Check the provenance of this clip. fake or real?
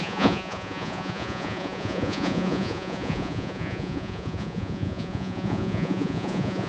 fake